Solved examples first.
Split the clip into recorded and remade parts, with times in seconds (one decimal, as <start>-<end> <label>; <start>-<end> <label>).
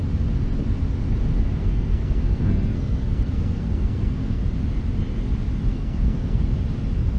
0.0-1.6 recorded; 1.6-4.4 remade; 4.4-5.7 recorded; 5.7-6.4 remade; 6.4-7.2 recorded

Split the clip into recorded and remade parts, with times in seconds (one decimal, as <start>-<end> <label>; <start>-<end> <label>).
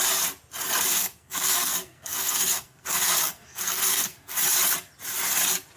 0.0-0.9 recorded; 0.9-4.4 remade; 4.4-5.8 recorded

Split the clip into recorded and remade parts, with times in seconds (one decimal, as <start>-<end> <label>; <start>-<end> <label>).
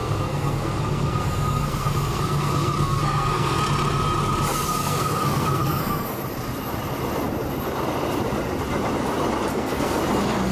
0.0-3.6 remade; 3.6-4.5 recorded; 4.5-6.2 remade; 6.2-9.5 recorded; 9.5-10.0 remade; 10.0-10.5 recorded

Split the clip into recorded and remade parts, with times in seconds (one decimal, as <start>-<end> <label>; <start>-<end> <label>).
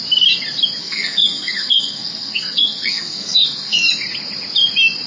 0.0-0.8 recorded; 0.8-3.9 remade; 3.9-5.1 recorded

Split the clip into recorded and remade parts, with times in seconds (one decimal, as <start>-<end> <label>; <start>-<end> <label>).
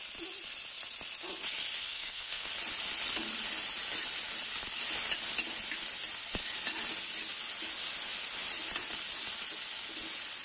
0.0-1.8 recorded; 1.8-2.5 remade; 2.5-10.4 recorded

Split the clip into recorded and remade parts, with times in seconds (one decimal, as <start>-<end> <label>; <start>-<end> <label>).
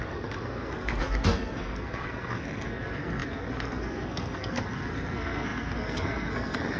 0.0-6.8 remade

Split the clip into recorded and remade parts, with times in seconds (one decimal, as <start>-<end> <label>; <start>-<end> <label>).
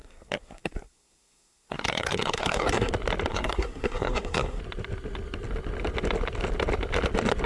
0.0-2.9 remade; 2.9-3.3 recorded; 3.3-4.6 remade; 4.6-7.5 recorded